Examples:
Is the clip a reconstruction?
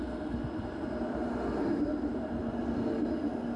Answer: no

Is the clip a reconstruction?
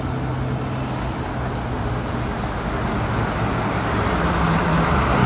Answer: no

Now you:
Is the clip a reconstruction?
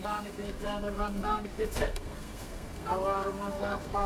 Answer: yes